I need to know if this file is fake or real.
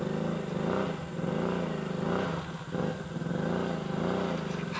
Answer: real